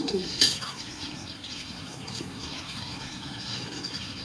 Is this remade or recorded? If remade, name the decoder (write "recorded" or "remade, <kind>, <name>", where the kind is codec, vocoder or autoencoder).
remade, codec, SNAC